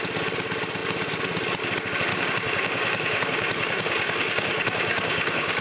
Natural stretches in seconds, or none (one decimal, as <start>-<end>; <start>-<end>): 0.0-2.1